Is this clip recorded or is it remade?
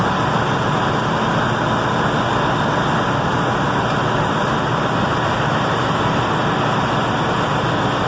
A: recorded